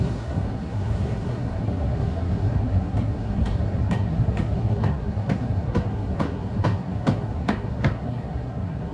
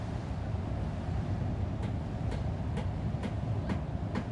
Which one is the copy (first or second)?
first